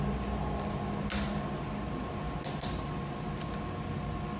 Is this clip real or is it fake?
real